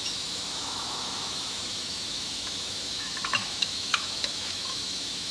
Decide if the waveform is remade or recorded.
remade